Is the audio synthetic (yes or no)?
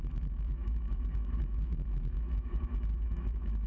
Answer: yes